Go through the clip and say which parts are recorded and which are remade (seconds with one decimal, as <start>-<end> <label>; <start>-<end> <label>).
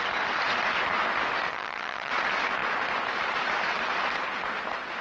0.0-1.5 recorded; 1.5-2.1 remade; 2.1-5.0 recorded